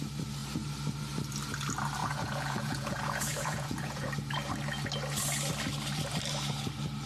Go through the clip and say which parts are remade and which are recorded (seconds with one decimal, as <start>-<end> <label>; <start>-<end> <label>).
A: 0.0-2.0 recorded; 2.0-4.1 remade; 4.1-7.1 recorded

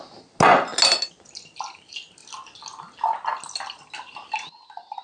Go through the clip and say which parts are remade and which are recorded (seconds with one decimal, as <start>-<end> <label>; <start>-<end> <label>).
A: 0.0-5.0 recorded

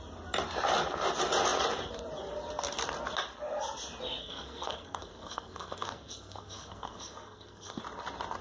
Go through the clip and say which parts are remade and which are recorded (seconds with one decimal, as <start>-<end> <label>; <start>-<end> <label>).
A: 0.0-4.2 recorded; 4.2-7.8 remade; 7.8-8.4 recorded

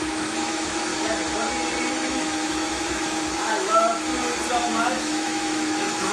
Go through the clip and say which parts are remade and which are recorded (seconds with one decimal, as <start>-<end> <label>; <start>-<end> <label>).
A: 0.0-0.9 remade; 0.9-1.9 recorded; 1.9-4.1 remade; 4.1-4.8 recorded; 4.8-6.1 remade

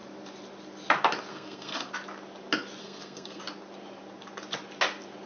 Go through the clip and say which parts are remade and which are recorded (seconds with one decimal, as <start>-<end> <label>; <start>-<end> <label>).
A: 0.0-1.3 recorded; 1.3-1.9 remade; 1.9-2.8 recorded; 2.8-3.4 remade; 3.4-5.3 recorded

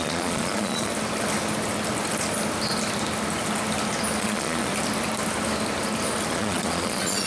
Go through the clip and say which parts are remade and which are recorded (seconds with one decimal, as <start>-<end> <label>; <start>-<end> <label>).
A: 0.0-0.9 remade; 0.9-4.2 recorded; 4.2-4.7 remade; 4.7-6.3 recorded; 6.3-7.3 remade

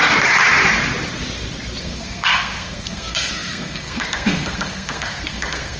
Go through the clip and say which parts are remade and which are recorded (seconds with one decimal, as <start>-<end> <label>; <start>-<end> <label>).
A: 0.0-1.8 recorded; 1.8-5.8 remade

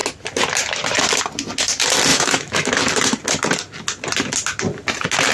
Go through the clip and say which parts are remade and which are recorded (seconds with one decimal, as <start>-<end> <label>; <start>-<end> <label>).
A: 0.0-2.1 recorded; 2.1-2.8 remade; 2.8-5.3 recorded